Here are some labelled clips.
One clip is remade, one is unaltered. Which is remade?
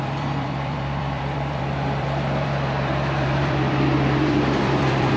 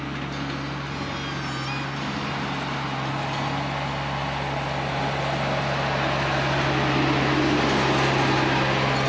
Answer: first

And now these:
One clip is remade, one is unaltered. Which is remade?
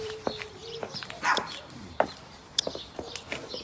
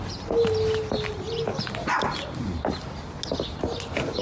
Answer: first